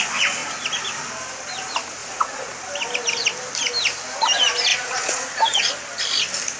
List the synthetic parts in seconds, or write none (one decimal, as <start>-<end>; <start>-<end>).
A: 2.0-2.5; 4.7-5.7